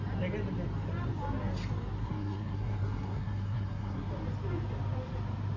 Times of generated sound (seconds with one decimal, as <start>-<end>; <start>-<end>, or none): 2.0-4.1